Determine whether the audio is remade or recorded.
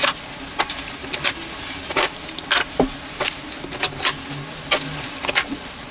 recorded